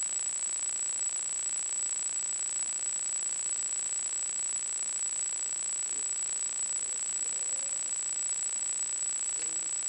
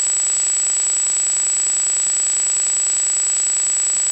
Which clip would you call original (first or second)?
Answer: second